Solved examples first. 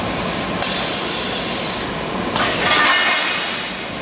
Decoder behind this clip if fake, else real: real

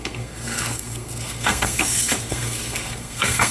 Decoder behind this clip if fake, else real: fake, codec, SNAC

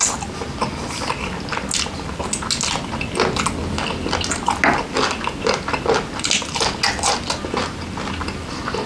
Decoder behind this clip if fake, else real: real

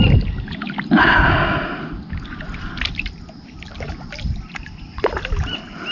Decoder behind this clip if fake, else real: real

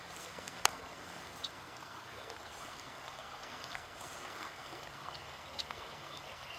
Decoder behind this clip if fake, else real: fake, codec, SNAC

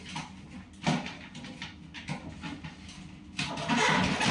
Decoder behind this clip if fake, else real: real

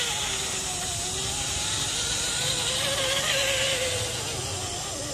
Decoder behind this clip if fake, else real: real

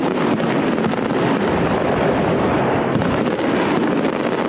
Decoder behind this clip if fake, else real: real